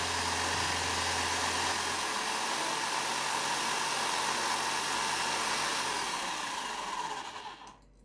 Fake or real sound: real